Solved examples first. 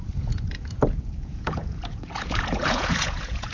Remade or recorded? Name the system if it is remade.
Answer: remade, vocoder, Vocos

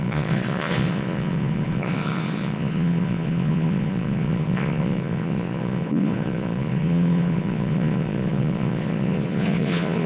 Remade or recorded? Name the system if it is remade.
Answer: remade, vocoder, Vocos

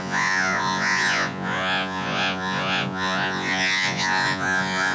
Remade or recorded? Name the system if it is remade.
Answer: remade, vocoder, Vocos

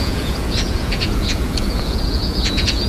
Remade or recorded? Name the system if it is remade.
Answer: remade, vocoder, Vocos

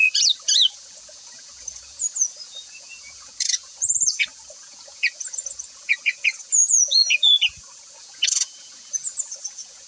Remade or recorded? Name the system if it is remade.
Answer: remade, vocoder, Vocos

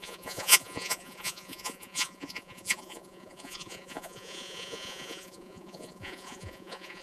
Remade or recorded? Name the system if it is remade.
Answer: remade, vocoder, Vocos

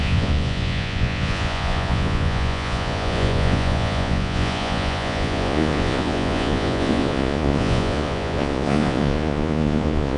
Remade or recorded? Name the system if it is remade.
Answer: remade, vocoder, Vocos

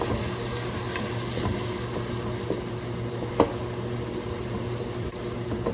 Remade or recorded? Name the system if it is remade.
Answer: recorded